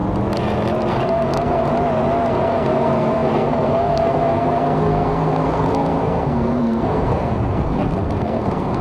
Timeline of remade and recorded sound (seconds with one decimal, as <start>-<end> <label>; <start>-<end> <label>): 0.0-0.9 recorded; 0.9-1.7 remade; 1.7-2.3 recorded; 2.3-8.8 remade